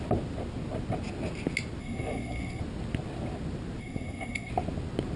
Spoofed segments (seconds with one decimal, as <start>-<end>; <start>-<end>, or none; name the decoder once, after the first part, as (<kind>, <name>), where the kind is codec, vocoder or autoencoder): 1.8-2.6 (codec, SNAC); 3.8-4.5